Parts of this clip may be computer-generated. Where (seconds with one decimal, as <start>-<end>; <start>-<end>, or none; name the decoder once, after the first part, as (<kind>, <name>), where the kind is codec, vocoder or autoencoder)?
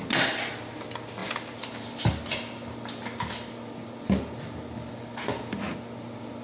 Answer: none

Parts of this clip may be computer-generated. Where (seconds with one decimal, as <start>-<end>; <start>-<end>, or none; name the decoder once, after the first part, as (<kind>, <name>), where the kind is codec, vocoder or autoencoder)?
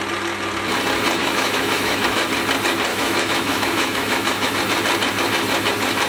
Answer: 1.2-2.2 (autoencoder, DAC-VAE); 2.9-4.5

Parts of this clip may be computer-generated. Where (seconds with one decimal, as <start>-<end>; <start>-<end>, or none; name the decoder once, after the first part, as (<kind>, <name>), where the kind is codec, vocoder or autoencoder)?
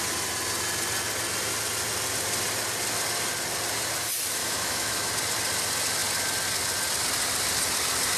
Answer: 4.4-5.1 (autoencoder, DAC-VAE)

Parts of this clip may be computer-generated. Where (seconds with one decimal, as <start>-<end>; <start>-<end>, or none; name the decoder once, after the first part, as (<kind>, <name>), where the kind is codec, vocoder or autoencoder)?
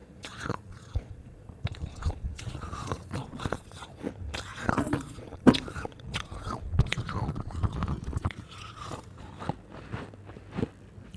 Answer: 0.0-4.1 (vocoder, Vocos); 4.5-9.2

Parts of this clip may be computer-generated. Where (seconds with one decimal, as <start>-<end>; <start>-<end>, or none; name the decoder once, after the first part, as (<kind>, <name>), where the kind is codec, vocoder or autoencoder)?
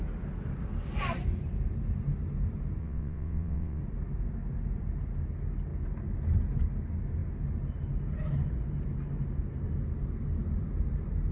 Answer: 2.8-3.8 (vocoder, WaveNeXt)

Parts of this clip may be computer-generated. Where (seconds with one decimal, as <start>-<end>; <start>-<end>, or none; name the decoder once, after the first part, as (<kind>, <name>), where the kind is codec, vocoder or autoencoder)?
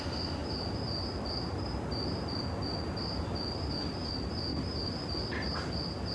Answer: none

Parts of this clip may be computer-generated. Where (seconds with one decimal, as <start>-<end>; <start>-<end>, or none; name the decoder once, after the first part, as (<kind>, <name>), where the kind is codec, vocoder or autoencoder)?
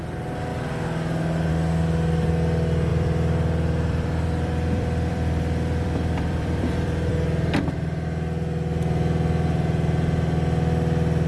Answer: 2.9-7.1 (vocoder, BigVGAN v2)